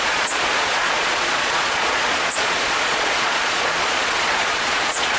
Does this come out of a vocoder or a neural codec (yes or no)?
yes